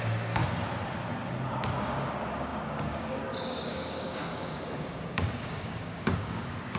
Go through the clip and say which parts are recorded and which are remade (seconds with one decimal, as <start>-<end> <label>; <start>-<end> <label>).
0.0-0.4 remade; 0.4-1.8 recorded; 1.8-6.8 remade